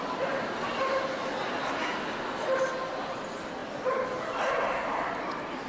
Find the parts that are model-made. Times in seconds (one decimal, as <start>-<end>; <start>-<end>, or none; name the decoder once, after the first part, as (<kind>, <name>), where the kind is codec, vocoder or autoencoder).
none